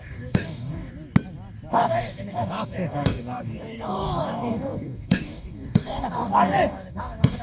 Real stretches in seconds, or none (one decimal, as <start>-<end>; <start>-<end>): 0.9-1.7